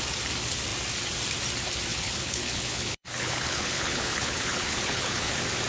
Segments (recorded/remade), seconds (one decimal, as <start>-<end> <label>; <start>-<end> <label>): 0.0-1.9 recorded; 1.9-5.3 remade; 5.3-5.7 recorded